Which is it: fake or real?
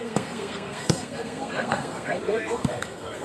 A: fake